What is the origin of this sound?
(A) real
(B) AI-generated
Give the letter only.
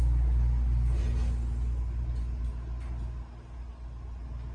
A